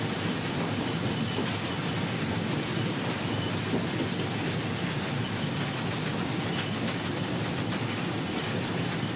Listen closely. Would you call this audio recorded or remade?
recorded